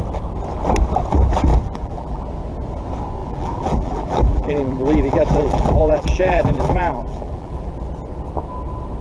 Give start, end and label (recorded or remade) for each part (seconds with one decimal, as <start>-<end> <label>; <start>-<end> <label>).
0.0-1.5 recorded; 1.5-2.2 remade; 2.2-3.2 recorded; 3.2-7.7 remade; 7.7-9.0 recorded